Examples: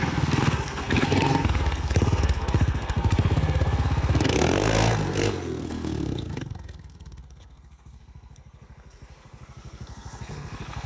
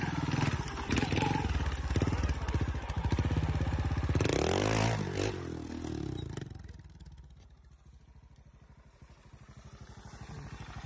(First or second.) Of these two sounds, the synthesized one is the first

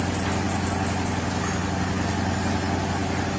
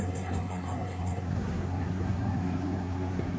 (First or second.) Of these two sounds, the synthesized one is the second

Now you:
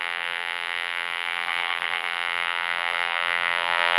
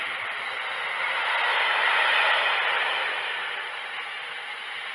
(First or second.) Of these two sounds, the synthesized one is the first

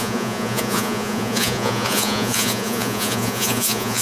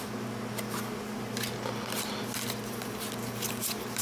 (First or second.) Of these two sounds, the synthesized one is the first